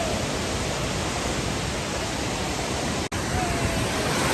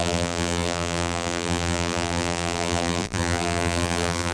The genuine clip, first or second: first